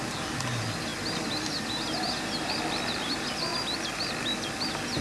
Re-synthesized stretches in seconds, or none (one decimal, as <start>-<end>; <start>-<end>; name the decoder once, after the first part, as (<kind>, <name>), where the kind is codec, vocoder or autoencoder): none